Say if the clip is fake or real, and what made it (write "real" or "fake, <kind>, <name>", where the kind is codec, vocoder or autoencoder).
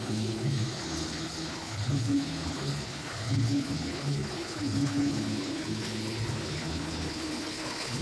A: fake, codec, HILCodec